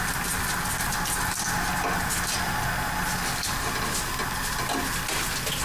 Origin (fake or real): real